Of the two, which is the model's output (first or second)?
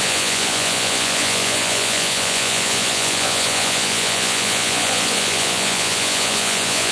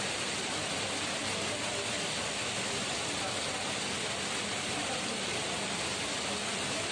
first